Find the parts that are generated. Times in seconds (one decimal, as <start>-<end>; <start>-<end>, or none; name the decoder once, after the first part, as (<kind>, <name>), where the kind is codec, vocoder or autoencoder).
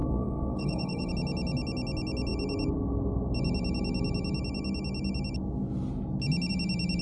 0.0-1.1 (codec, DAC)